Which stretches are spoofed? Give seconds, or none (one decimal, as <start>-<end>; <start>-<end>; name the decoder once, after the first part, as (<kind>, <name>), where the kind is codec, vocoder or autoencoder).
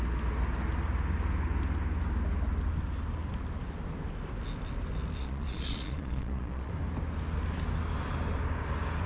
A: 5.2-6.7 (vocoder, Vocos)